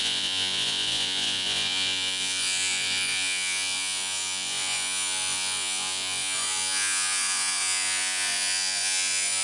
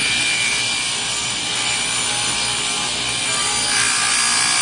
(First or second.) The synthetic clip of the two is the first